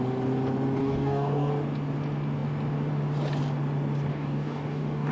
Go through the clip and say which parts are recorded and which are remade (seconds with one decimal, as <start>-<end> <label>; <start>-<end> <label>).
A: 0.0-0.8 recorded; 0.8-1.5 remade; 1.5-4.1 recorded; 4.1-5.1 remade